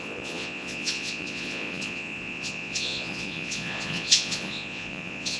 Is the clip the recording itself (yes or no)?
no